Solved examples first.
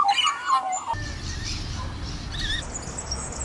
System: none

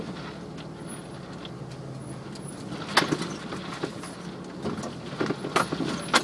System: none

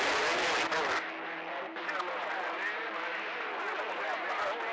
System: none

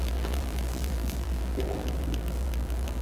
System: vocoder, BigVGAN v2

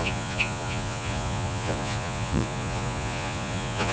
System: vocoder, Vocos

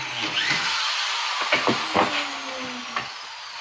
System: none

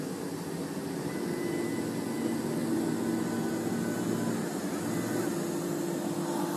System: none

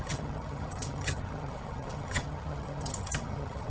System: vocoder, HiFi-GAN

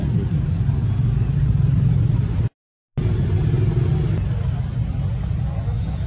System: none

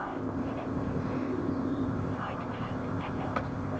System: codec, ZipCodec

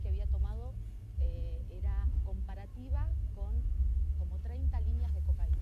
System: none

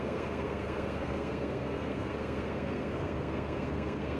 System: codec, SNAC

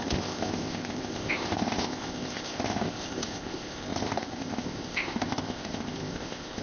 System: codec, ZipCodec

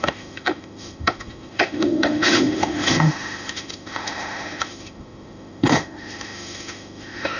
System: autoencoder, DAC-VAE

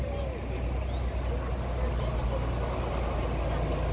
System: none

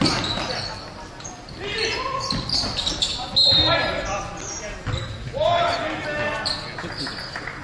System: none